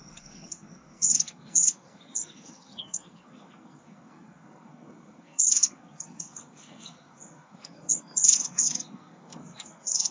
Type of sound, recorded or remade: remade